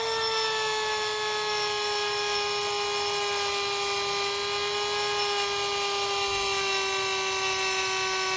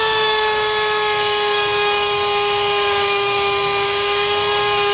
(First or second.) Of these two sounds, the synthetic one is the second